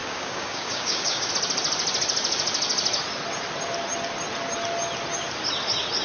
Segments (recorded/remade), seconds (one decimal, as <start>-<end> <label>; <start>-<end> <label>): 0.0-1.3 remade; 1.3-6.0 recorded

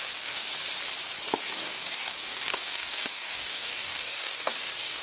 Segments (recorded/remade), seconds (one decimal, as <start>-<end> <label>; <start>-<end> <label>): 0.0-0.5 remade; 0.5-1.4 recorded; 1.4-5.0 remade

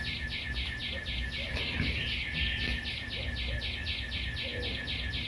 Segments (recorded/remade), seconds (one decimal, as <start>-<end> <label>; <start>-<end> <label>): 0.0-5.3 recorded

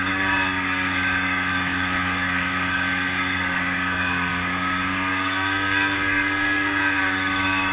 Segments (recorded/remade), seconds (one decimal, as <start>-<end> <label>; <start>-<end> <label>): 0.0-7.7 remade

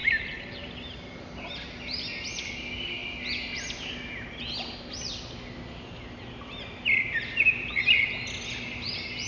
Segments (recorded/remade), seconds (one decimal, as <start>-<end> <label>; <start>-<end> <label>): 0.0-9.3 recorded